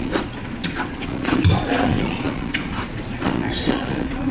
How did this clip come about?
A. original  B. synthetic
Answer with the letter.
B